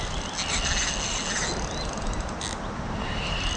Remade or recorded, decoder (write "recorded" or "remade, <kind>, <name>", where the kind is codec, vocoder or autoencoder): recorded